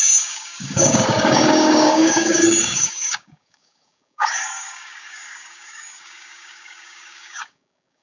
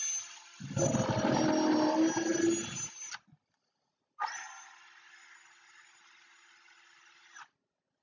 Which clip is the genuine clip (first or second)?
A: second